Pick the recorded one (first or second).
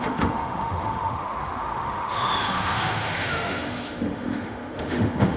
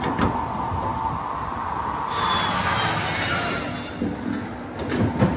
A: second